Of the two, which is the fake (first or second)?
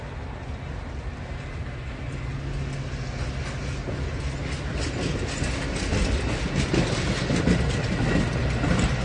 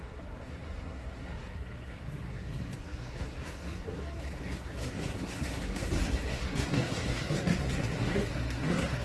second